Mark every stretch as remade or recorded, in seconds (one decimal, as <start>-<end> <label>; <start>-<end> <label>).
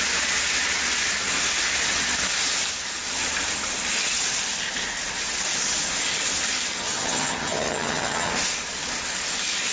0.0-6.8 recorded; 6.8-8.3 remade; 8.3-9.7 recorded